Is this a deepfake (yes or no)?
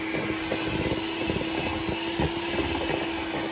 no